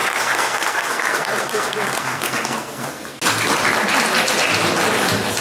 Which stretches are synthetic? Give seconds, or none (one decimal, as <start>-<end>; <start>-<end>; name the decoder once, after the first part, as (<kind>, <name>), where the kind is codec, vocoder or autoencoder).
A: 0.0-3.2 (codec, SNAC)